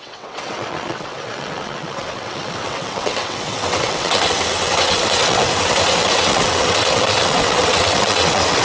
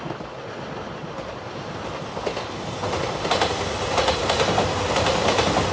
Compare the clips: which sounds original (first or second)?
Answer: second